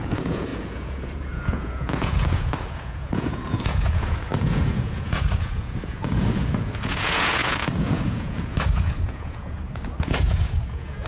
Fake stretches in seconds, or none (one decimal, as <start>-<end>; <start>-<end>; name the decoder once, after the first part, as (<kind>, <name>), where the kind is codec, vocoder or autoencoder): 0.0-11.1 (vocoder, Vocos)